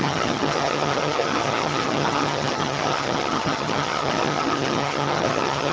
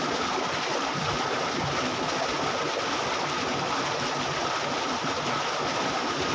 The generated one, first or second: first